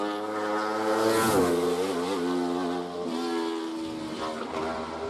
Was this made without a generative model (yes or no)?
yes